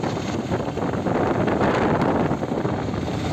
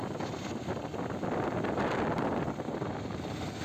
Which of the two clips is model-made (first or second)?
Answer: first